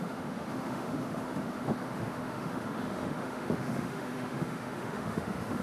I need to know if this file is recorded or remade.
remade